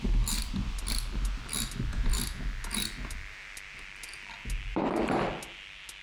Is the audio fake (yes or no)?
no